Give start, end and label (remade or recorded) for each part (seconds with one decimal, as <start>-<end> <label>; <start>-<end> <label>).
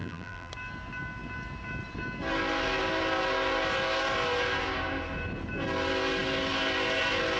0.0-0.5 remade; 0.5-7.4 recorded